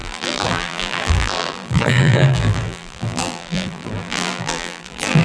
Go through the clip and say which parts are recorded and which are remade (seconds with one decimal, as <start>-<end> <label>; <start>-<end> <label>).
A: 0.0-5.2 remade